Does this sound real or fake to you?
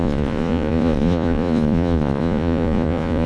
fake